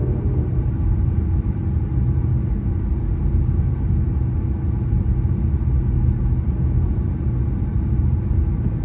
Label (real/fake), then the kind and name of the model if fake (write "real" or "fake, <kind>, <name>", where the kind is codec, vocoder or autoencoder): real